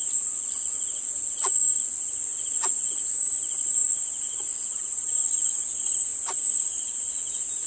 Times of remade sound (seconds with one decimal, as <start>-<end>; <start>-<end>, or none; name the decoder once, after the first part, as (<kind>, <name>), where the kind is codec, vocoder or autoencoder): none